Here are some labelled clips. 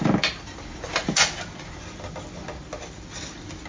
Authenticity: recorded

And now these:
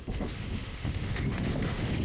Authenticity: remade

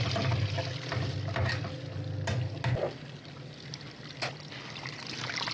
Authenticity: recorded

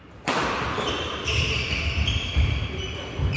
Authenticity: recorded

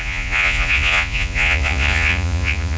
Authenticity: remade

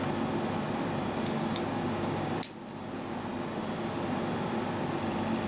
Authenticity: recorded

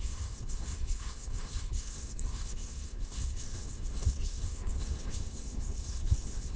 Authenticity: remade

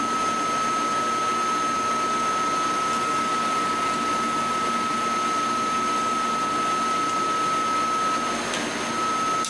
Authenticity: recorded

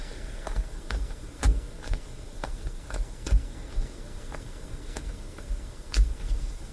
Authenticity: remade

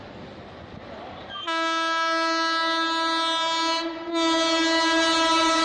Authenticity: recorded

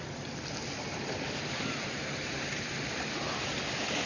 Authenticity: remade